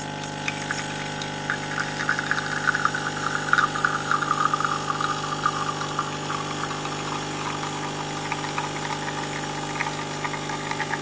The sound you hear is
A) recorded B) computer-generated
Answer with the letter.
A